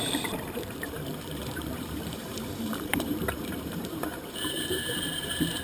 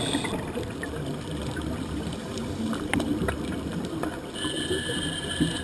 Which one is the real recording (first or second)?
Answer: second